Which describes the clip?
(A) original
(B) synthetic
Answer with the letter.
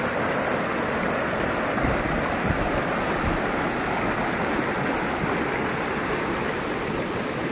A